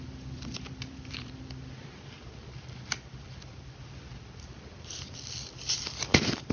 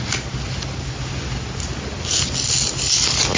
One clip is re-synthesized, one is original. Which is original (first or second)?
second